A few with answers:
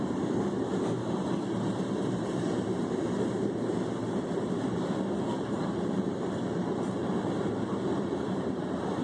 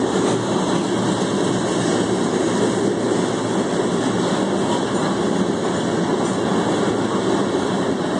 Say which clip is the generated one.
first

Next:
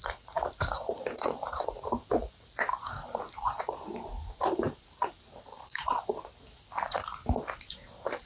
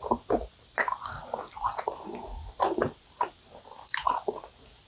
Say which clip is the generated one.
first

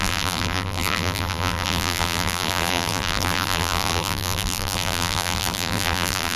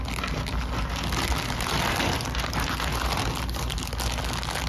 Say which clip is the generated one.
first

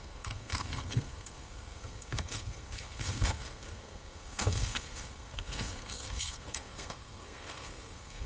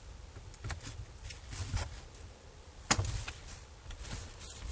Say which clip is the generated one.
first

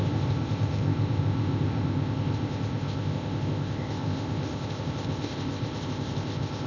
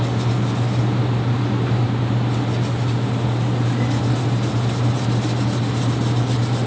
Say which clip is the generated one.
first